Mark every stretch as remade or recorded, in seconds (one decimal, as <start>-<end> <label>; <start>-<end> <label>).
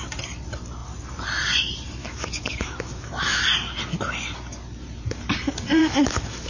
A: 0.0-2.0 recorded; 2.0-3.4 remade; 3.4-5.8 recorded; 5.8-6.5 remade